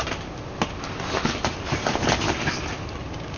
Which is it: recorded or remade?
recorded